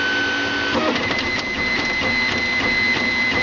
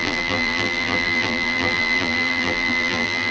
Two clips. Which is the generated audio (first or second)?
second